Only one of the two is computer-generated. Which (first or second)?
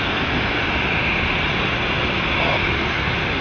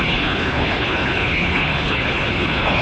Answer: second